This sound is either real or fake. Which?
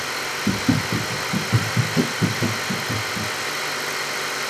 real